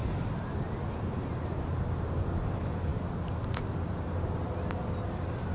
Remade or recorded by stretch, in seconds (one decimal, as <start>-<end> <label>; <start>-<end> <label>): 0.0-5.5 recorded